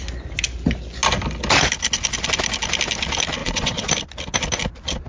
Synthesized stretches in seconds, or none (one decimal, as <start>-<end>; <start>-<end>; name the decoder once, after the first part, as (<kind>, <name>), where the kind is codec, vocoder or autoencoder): 3.4-3.9 (vocoder, WaveNeXt)